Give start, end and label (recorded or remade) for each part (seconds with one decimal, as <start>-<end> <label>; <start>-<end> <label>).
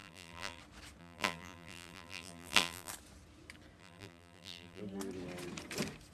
0.0-0.6 remade; 0.6-1.0 recorded; 1.0-2.9 remade; 2.9-3.8 recorded; 3.8-4.8 remade; 4.8-6.1 recorded